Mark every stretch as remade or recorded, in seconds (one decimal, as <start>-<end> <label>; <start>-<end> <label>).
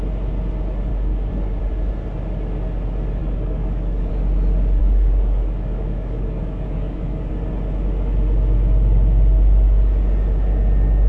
0.0-0.9 recorded; 0.9-1.6 remade; 1.6-3.2 recorded; 3.2-4.1 remade; 4.1-4.8 recorded; 4.8-7.3 remade; 7.3-11.1 recorded